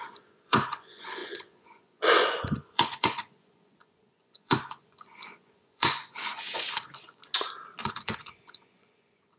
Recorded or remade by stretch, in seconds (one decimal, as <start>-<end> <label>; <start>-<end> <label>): 0.0-7.2 remade; 7.2-7.8 recorded; 7.8-9.4 remade